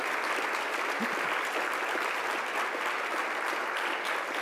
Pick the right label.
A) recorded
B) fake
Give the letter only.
A